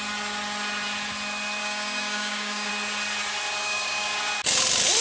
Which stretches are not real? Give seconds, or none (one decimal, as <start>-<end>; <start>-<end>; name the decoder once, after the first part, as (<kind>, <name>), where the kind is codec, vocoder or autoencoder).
1.6-2.7 (codec, DAC); 3.6-4.2